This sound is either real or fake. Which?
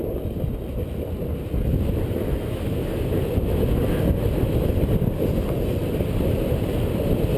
real